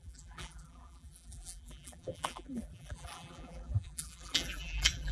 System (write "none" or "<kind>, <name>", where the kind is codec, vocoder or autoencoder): vocoder, BigVGAN v2